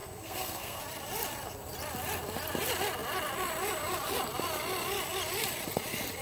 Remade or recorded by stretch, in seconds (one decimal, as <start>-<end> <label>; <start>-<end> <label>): 0.0-0.8 remade; 0.8-6.2 recorded